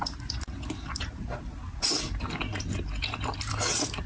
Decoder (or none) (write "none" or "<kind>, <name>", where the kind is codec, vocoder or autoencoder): none